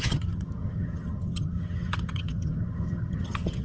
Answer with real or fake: fake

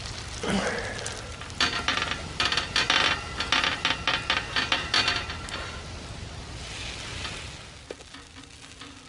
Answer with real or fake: real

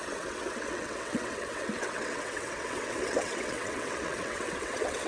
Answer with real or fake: fake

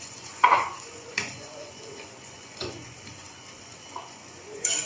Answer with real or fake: fake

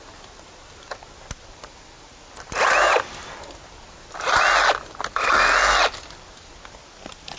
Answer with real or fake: real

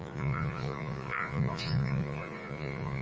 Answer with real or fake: fake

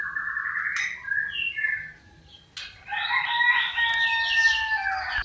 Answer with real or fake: real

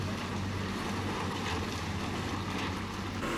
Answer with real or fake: real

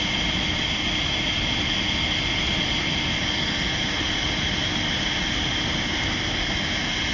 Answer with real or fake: real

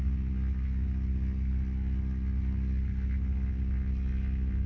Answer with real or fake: real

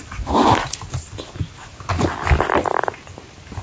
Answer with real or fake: real